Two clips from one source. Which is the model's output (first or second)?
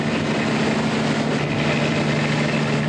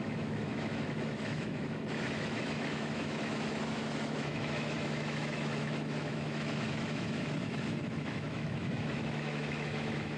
second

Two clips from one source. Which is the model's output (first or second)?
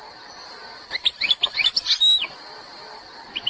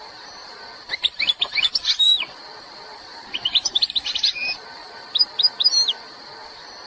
second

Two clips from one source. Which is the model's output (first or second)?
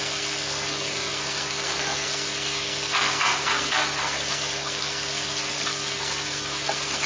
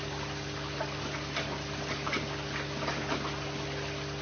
first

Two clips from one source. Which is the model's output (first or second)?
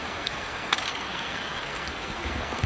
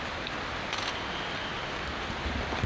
first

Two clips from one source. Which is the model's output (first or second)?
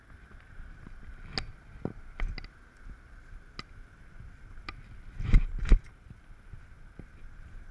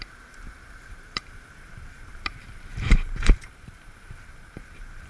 second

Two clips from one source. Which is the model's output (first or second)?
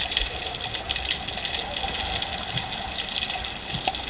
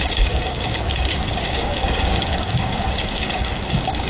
second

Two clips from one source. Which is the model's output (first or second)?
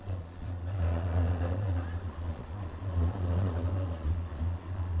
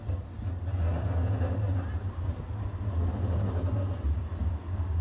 first